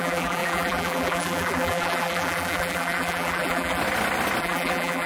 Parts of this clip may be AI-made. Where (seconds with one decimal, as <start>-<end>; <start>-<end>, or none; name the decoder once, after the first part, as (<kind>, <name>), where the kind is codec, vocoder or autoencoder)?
0.0-3.8 (vocoder, BigVGAN v2); 4.4-5.1